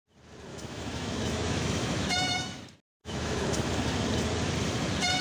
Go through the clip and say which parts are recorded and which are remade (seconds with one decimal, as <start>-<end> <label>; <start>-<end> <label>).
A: 0.0-0.5 recorded; 0.5-2.6 remade; 2.6-3.0 recorded; 3.0-3.7 remade; 3.7-5.2 recorded